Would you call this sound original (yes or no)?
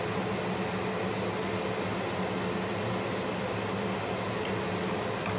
yes